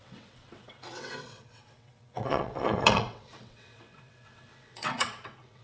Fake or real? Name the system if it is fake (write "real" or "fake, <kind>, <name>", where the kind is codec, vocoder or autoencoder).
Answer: fake, vocoder, WaveNeXt